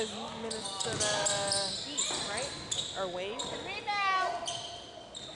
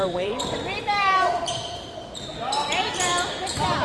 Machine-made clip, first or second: second